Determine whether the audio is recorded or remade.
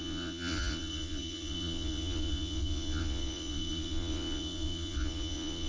remade